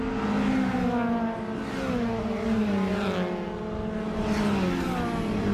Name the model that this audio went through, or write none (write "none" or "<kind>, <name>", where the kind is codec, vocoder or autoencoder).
none